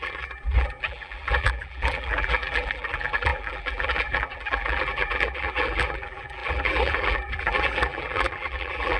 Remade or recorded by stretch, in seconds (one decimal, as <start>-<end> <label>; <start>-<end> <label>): 0.0-9.0 remade